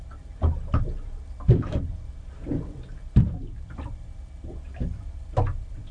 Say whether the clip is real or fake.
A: real